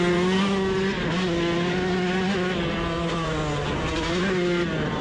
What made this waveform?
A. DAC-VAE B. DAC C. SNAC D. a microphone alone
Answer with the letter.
D